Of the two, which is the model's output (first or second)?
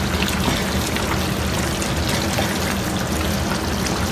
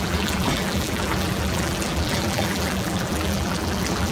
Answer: second